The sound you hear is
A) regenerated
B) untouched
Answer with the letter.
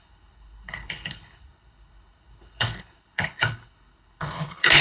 A